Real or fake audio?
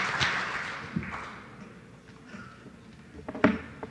real